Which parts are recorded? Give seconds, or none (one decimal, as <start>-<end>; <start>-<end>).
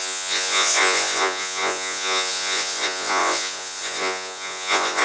none